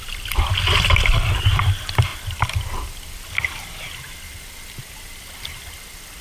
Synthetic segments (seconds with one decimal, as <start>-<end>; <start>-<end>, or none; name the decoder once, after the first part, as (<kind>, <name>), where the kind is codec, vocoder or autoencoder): none